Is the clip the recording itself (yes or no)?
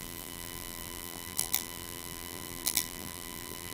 no